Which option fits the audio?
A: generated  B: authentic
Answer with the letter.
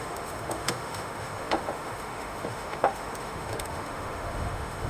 A